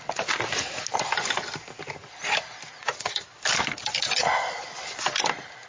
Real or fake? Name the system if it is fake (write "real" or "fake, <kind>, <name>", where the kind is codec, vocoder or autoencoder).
real